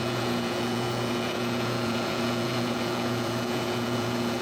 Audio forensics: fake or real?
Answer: fake